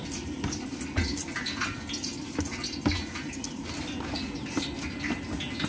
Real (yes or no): yes